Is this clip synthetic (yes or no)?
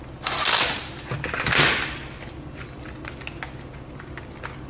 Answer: no